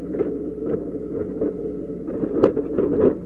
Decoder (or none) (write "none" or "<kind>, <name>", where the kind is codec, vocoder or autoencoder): none